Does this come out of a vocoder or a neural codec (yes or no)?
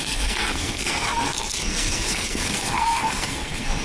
yes